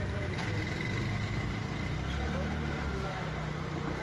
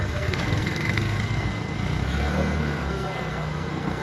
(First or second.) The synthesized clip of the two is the second